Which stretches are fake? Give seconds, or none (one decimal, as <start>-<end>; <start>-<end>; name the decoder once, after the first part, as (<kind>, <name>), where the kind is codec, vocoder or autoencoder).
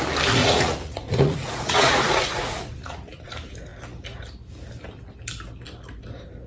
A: 0.4-3.3 (vocoder, Vocos)